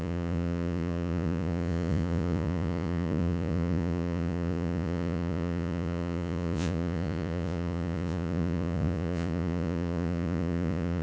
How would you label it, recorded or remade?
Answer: remade